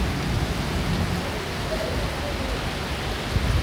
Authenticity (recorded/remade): recorded